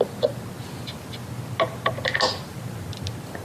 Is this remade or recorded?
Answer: recorded